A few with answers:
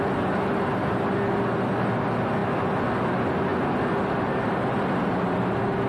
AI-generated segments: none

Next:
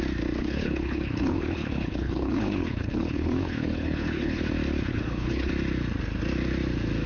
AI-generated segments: 0.4-4.4 (codec, HILCodec); 4.9-5.5

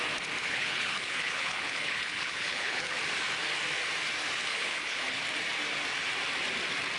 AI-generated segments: 0.4-3.0 (codec, HILCodec); 4.5-5.2

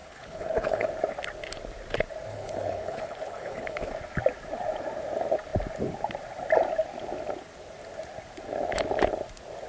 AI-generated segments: 0.0-0.9 (codec, HILCodec); 2.3-3.9